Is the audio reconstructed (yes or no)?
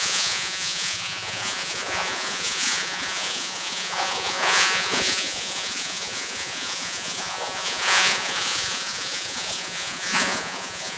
yes